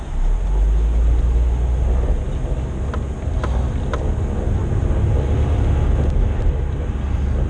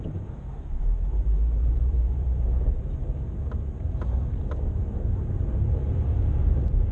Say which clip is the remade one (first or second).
second